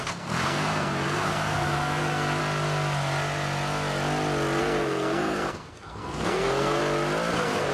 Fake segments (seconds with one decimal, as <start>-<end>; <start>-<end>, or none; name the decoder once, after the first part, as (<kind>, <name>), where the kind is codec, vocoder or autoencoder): 0.0-2.4 (codec, SNAC); 4.6-6.8; 7.3-7.7